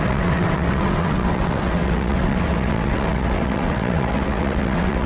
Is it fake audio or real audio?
fake